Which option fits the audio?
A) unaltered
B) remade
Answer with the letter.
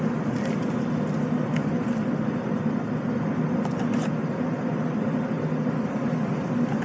A